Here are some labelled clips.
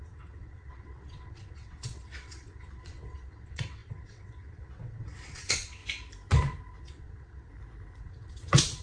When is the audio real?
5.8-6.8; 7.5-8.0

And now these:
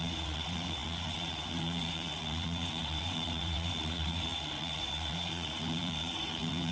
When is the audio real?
none

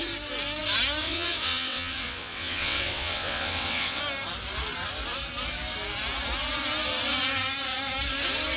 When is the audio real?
0.0-1.0; 4.0-8.6

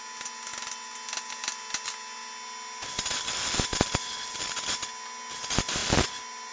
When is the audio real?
0.0-6.5

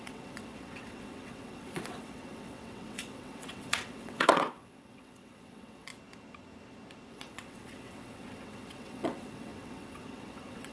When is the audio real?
5.9-7.1

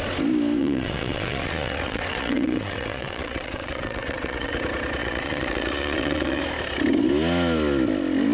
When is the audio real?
0.0-0.6; 4.6-5.0; 6.4-8.3

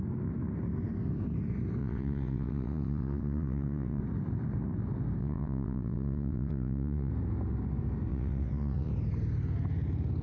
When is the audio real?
0.0-1.8; 4.0-5.2; 7.1-8.1; 8.9-10.2